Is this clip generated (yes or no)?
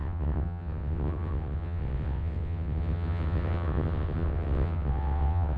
yes